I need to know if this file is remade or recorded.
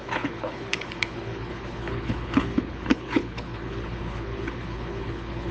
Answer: remade